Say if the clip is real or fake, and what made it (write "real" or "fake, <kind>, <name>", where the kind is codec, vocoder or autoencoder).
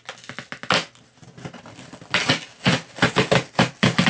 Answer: real